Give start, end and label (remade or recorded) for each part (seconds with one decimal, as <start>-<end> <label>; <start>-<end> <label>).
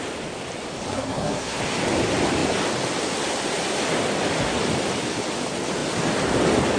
0.0-0.9 recorded; 0.9-1.6 remade; 1.6-6.8 recorded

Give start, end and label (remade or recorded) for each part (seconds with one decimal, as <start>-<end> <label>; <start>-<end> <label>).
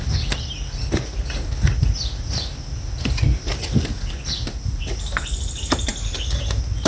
0.0-6.9 recorded